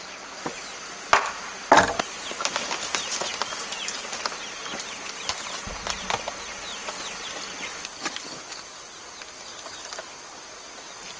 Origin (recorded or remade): recorded